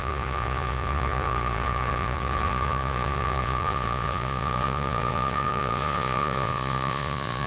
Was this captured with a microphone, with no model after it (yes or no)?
no